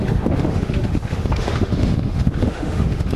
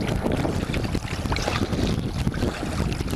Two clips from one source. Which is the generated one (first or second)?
first